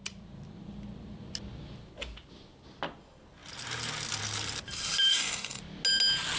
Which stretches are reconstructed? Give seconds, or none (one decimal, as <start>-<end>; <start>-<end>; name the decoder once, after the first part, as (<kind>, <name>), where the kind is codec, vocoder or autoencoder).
5.1-5.6 (codec, DAC)